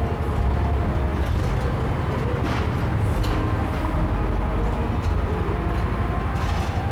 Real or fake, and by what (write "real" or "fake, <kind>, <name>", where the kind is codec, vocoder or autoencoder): real